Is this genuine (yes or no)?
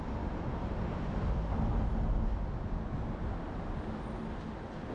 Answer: yes